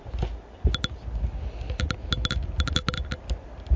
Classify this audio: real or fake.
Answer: real